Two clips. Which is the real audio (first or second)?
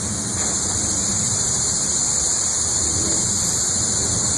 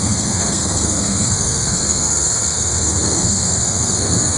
first